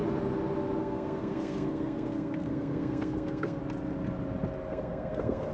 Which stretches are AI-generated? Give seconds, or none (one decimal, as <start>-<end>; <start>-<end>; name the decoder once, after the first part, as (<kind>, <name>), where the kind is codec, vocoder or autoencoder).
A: 0.8-3.6 (codec, SNAC); 4.7-5.5